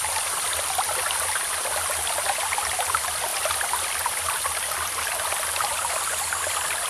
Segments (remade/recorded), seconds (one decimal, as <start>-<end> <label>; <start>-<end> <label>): 0.0-6.9 recorded